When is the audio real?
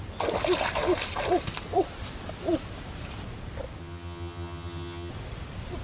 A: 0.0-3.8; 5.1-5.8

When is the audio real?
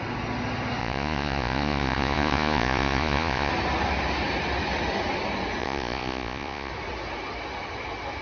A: 0.0-0.8; 3.5-5.6; 6.7-8.2